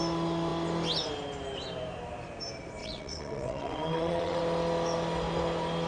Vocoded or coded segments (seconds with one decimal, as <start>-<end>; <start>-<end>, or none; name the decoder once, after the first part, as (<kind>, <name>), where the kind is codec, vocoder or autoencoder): 2.8-4.4 (vocoder, WaveNeXt)